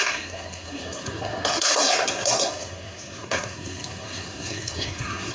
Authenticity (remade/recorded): remade